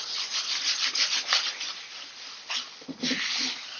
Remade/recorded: recorded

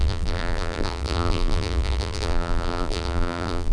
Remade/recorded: remade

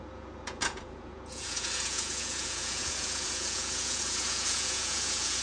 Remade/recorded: remade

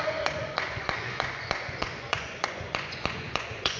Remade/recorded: remade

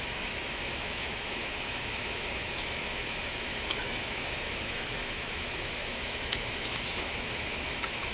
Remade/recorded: remade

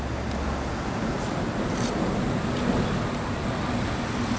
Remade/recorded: recorded